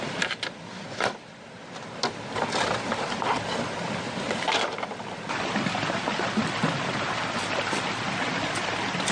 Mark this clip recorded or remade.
recorded